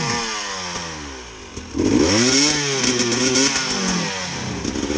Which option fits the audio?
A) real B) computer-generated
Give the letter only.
A